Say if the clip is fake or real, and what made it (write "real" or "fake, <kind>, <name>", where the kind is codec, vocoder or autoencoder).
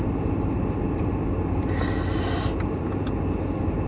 real